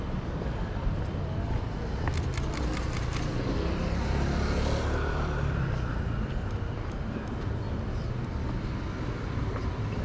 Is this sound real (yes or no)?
yes